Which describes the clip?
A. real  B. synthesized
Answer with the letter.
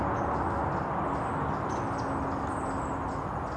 A